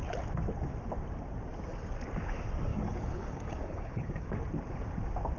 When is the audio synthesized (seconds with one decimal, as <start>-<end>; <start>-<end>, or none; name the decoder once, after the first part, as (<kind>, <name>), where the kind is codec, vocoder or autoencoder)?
2.7-4.3 (codec, DAC)